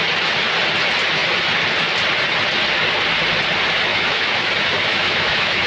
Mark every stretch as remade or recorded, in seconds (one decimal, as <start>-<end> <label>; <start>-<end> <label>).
0.0-3.9 recorded; 3.9-4.5 remade; 4.5-4.9 recorded; 4.9-5.7 remade